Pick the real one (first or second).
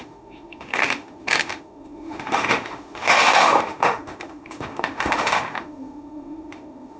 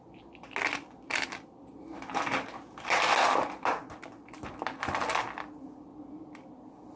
second